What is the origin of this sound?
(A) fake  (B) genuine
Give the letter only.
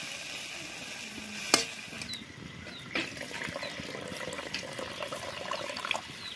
B